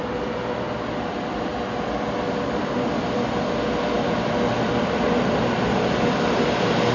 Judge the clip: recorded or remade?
recorded